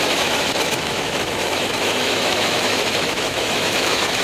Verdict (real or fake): fake